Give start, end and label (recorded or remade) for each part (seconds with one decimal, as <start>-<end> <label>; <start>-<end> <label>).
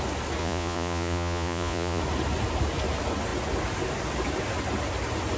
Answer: 0.0-0.4 recorded; 0.4-2.0 remade; 2.0-5.4 recorded